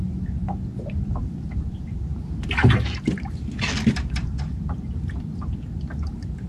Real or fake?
real